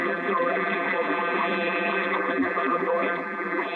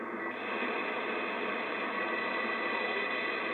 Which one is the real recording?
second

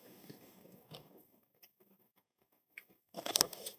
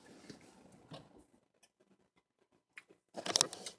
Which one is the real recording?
second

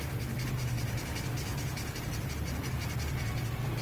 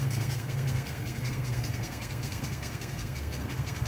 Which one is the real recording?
first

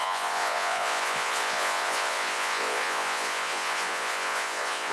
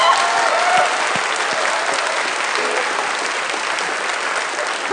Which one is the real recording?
second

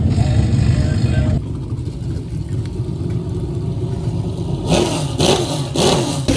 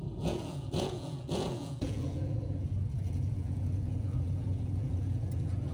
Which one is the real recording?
first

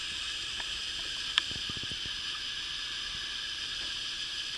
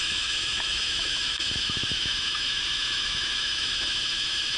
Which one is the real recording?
first